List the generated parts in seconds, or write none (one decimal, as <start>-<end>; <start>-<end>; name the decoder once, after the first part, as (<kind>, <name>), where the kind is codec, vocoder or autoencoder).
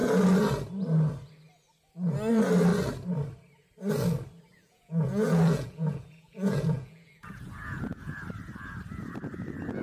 4.5-8.1 (vocoder, Vocos)